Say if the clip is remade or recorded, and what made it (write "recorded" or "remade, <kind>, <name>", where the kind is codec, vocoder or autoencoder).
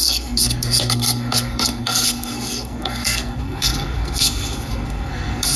remade, codec, SNAC